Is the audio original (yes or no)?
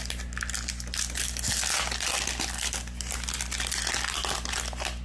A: yes